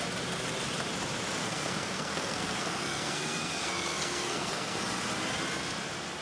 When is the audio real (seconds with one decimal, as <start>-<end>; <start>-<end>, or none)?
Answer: 0.0-1.4; 4.8-6.2